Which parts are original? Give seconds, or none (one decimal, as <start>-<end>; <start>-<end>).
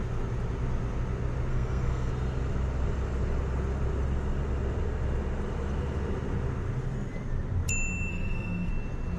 0.0-1.5; 2.1-8.1; 8.7-9.2